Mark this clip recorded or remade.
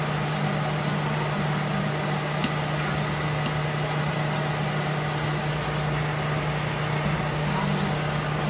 recorded